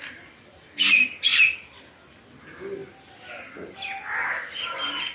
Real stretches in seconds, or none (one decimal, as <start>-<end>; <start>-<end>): 0.0-5.1